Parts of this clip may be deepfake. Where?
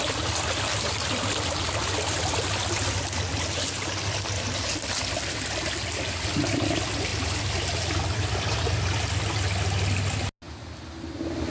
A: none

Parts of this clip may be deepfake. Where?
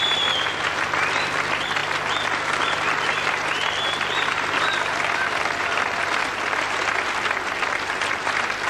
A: none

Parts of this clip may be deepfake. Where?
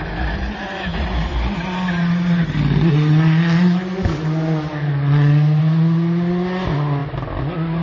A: none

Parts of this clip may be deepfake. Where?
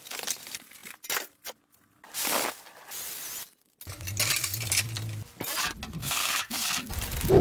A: 6.0-6.9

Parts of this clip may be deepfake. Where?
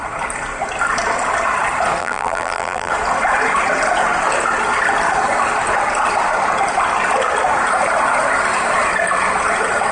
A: 2.0-2.9